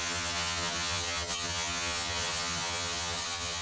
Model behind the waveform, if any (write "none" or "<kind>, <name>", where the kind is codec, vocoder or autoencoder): vocoder, HiFi-GAN